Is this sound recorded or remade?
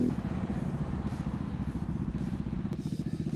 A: recorded